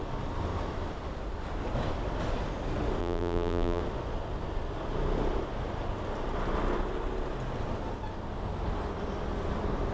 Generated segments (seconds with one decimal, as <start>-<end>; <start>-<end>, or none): 3.0-3.8